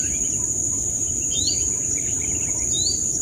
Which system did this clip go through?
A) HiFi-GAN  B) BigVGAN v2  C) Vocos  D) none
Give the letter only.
B